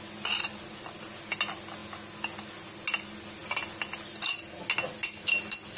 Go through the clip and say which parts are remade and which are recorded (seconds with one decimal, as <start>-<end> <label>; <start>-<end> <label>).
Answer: 0.0-5.8 recorded